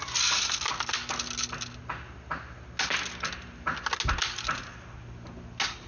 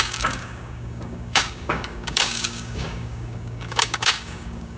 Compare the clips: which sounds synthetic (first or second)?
second